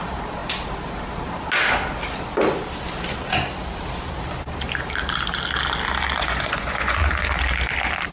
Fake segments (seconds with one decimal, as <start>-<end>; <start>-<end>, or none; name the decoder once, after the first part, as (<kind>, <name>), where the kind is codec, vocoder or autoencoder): 6.2-7.1 (vocoder, Vocos)